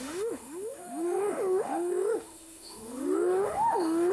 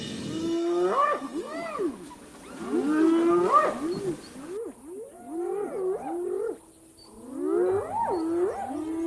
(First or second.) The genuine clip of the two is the second